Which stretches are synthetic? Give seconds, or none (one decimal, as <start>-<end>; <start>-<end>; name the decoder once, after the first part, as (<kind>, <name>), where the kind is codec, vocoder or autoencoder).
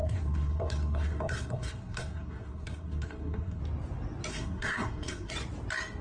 0.0-3.6 (codec, SNAC); 4.3-5.3